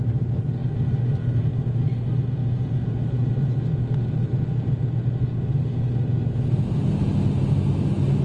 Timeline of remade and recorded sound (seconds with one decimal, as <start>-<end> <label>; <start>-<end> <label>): 0.0-2.4 recorded; 2.4-3.3 remade; 3.3-8.2 recorded

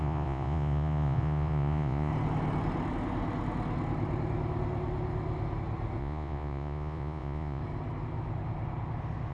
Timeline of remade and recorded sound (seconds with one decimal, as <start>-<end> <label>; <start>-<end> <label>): 0.0-2.1 remade; 2.1-6.0 recorded; 6.0-7.6 remade; 7.6-9.3 recorded

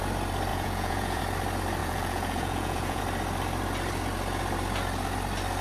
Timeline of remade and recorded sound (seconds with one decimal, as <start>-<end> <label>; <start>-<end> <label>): 0.0-0.5 recorded; 0.5-1.2 remade; 1.2-1.8 recorded; 1.8-3.0 remade; 3.0-5.6 recorded

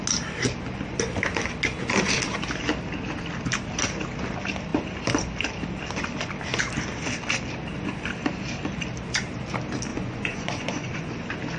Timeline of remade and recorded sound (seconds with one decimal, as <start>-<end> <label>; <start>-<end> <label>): 0.0-9.9 recorded; 9.9-11.1 remade; 11.1-11.6 recorded